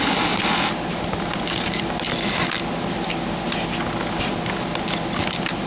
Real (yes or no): yes